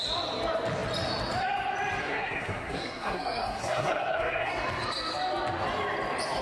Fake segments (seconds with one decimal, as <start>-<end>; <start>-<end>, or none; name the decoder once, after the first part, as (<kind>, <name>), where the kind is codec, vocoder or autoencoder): 2.0-4.5 (codec, SNAC)